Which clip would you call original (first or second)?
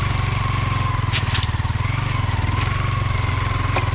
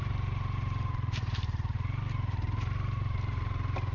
first